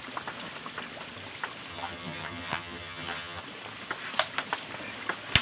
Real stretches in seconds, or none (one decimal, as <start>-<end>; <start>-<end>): 0.0-1.7; 3.4-5.4